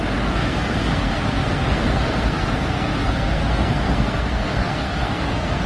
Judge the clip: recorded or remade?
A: remade